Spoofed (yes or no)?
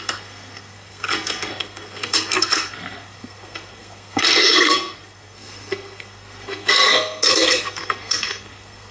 yes